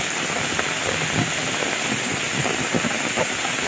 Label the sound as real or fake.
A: real